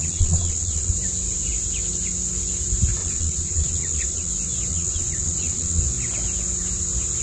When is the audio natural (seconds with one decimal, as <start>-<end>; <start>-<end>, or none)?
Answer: 0.9-3.0; 4.3-4.7; 5.8-7.2